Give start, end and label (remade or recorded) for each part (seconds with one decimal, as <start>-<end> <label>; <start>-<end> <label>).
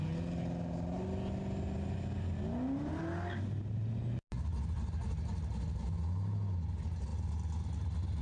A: 0.0-8.2 recorded